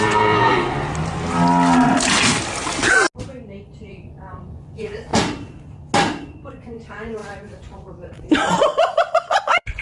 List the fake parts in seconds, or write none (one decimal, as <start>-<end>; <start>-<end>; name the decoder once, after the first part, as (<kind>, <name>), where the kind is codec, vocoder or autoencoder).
0.0-0.5 (vocoder, Vocos); 3.8-5.1; 6.5-9.8